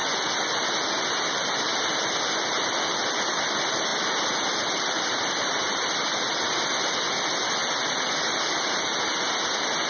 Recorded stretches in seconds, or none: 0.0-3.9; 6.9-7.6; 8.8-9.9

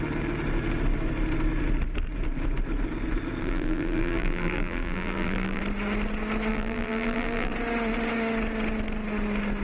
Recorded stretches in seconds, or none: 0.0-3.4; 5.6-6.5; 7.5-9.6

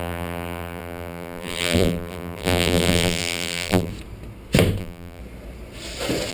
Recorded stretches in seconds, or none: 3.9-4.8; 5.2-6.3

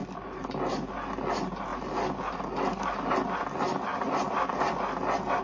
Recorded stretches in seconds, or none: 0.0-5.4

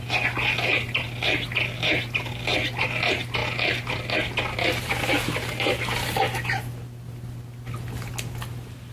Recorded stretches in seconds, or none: 0.0-8.9